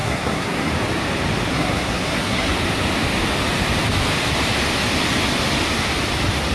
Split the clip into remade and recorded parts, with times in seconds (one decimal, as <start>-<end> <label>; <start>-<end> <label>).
0.0-0.7 remade; 0.7-1.5 recorded; 1.5-2.5 remade; 2.5-6.5 recorded

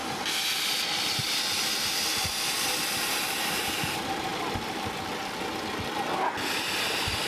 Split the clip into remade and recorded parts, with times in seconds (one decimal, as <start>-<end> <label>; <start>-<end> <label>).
0.0-7.3 recorded

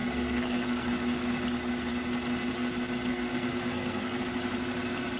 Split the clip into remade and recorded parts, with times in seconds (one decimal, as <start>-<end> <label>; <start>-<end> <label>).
0.0-0.9 remade; 0.9-3.1 recorded; 3.1-4.2 remade; 4.2-5.2 recorded